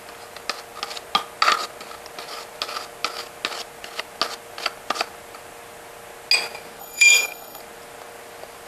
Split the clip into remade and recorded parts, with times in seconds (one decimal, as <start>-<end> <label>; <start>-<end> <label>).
0.0-6.8 recorded; 6.8-7.6 remade; 7.6-8.7 recorded